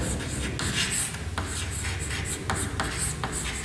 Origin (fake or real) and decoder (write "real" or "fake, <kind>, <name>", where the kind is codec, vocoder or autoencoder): real